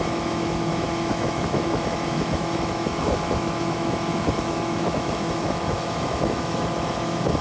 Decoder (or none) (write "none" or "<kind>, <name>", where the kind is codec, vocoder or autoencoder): autoencoder, DAC-VAE